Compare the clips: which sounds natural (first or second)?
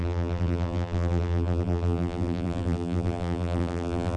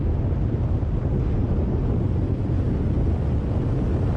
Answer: second